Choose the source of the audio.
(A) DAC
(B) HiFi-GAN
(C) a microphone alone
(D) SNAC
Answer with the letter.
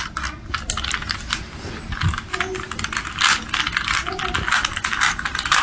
C